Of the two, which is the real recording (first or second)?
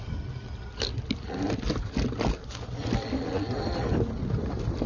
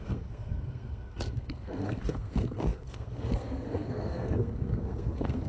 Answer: first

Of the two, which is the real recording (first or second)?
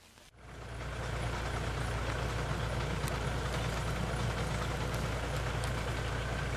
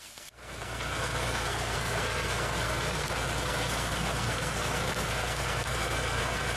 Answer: first